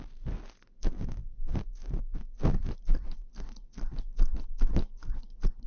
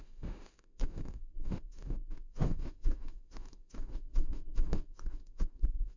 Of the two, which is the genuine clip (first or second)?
first